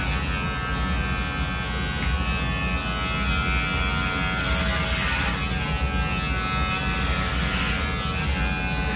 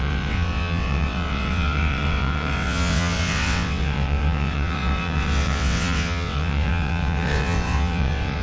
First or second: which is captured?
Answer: first